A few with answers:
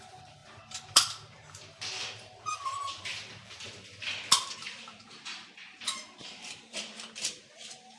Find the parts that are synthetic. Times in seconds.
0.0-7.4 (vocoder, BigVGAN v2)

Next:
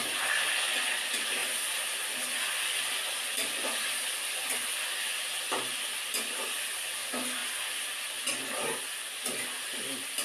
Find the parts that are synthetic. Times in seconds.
1.4-5.2 (vocoder, BigVGAN v2)

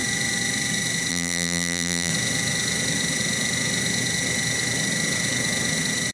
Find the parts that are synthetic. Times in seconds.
1.1-2.1 (vocoder, BigVGAN v2)

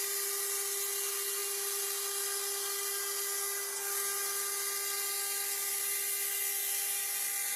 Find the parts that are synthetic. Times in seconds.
none